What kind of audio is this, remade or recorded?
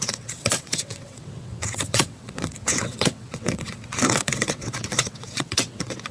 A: remade